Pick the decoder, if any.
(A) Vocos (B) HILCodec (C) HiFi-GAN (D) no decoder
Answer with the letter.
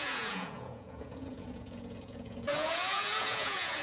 A